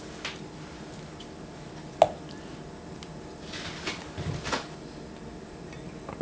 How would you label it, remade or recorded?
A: recorded